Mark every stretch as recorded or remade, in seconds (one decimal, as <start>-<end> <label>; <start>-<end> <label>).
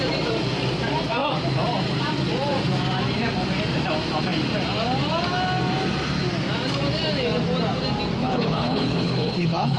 0.0-8.2 recorded; 8.2-9.8 remade